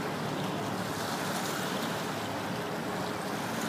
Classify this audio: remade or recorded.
recorded